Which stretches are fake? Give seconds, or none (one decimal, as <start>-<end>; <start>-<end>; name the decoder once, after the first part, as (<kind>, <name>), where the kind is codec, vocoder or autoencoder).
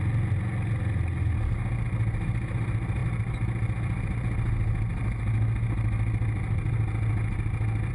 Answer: none